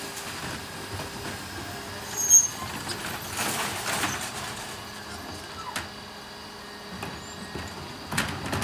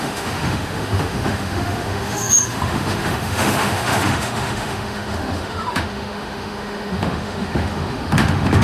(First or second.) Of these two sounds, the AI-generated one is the second